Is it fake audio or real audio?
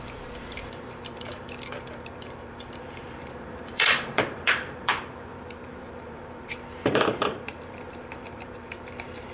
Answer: fake